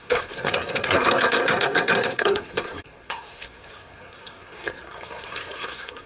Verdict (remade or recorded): remade